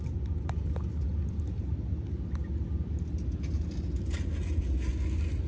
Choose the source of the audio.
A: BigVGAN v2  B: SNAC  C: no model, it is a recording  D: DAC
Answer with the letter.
C